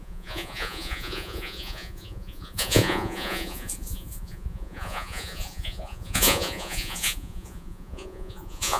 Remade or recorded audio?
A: remade